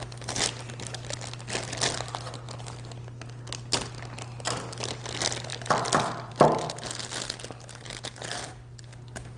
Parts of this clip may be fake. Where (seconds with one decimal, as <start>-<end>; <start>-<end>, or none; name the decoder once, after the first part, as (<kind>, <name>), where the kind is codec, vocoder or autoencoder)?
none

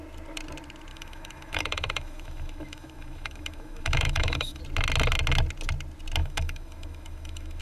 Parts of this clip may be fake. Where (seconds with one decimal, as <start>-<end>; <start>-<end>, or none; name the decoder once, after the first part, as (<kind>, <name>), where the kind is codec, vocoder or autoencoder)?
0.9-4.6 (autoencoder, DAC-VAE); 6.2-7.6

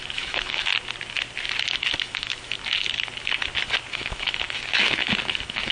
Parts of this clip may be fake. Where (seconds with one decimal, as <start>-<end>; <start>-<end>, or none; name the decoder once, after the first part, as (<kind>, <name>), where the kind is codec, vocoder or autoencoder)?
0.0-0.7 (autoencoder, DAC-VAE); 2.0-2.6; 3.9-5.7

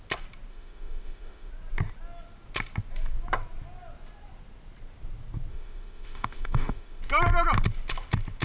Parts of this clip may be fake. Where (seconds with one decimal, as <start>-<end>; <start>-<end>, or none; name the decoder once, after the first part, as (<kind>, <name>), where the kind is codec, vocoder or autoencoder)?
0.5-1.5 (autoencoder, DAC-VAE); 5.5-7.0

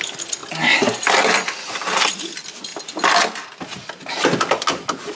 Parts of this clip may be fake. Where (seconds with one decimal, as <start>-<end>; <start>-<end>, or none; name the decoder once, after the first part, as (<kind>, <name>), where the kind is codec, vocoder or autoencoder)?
none